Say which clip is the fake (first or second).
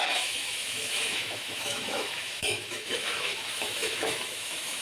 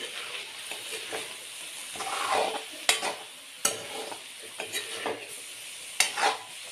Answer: first